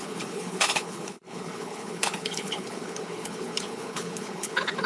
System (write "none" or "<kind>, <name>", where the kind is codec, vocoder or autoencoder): codec, HILCodec